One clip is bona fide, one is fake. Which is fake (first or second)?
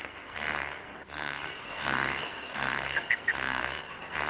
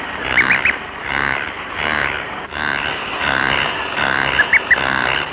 first